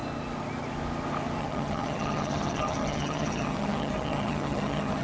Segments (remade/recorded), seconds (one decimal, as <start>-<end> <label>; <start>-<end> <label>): 0.0-1.4 recorded; 1.4-5.0 remade